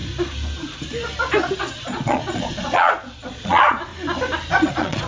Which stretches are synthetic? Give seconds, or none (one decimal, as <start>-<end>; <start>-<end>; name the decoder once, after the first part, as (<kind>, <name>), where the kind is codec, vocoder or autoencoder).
1.6-3.9 (vocoder, Vocos); 4.5-5.1